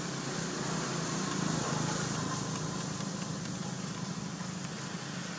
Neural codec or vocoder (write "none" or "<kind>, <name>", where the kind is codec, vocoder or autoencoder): none